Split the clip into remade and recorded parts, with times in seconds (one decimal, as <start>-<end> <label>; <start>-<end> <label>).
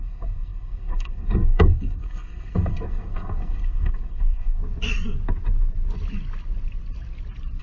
0.0-4.6 remade; 4.6-7.6 recorded